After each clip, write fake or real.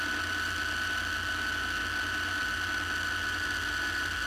real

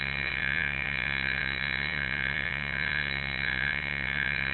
fake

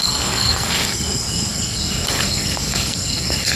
fake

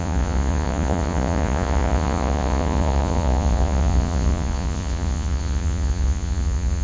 fake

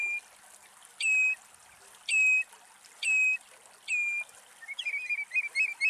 real